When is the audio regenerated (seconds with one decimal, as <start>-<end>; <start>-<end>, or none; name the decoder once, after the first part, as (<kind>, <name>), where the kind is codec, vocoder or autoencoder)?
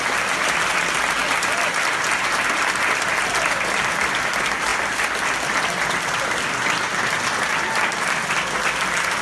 none